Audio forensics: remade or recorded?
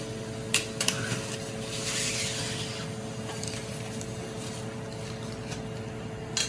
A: recorded